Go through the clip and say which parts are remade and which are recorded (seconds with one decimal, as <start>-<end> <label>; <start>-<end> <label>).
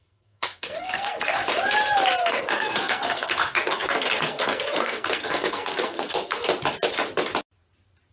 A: 0.0-1.4 remade; 1.4-2.3 recorded; 2.3-6.4 remade; 6.4-8.1 recorded